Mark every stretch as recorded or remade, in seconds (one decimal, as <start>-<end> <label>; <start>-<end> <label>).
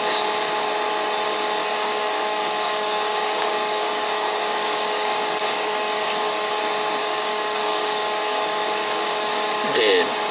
0.0-1.6 recorded; 1.6-6.6 remade; 6.6-7.0 recorded; 7.0-9.7 remade; 9.7-10.3 recorded